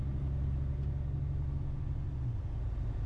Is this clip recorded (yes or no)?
yes